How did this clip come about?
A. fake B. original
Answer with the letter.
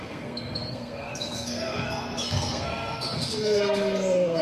A